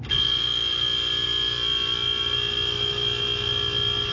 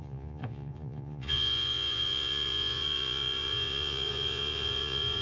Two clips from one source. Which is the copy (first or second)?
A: second